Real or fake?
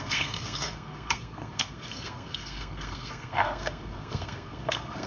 fake